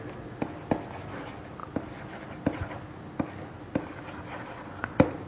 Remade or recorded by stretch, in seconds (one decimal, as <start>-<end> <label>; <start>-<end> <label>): 0.0-5.3 recorded